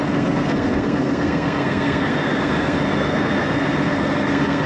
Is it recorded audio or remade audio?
remade